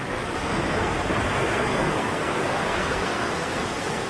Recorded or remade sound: remade